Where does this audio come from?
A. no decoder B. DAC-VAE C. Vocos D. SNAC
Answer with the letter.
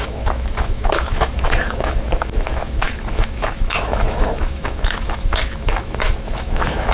B